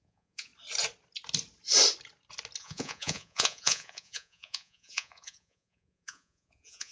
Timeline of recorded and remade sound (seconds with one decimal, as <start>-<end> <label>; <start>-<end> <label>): 0.0-0.5 remade; 0.5-2.6 recorded; 2.6-6.9 remade